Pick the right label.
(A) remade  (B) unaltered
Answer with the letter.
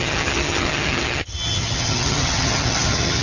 A